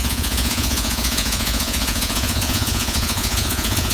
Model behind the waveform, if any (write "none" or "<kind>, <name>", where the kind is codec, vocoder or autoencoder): vocoder, Vocos